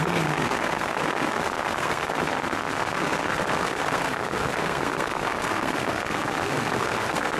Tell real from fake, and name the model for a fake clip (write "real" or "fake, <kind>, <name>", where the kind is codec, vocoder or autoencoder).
fake, codec, SNAC